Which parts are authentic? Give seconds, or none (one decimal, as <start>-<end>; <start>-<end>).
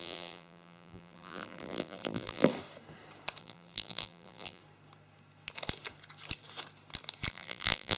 2.5-3.4; 4.6-7.3